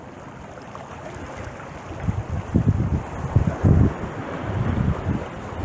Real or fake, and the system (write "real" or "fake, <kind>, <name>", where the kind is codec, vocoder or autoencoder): real